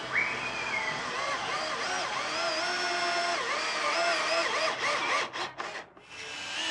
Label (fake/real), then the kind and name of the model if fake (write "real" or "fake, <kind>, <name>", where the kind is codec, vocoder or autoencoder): real